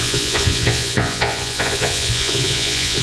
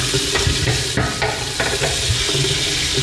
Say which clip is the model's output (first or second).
first